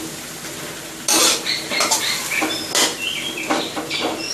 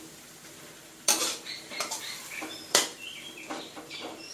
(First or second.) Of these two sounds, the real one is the first